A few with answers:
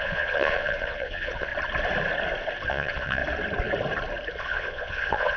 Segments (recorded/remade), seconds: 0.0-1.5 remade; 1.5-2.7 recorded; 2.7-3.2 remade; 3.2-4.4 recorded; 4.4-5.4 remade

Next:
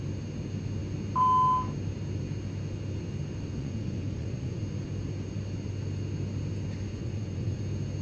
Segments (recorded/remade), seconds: 0.0-3.6 recorded; 3.6-4.6 remade; 4.6-6.9 recorded; 6.9-7.6 remade; 7.6-8.0 recorded

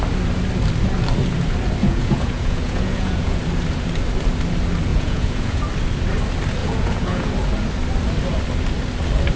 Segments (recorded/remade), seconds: 0.0-1.8 recorded; 1.8-3.4 remade; 3.4-4.9 recorded; 4.9-5.6 remade; 5.6-6.6 recorded; 6.6-7.3 remade; 7.3-9.4 recorded

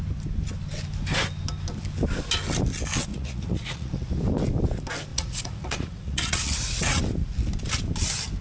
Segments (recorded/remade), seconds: 0.0-3.1 recorded; 3.1-4.1 remade; 4.1-5.1 recorded; 5.1-7.0 remade; 7.0-8.4 recorded